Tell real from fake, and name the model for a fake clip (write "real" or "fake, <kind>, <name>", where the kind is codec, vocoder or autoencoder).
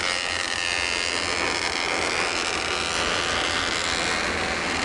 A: real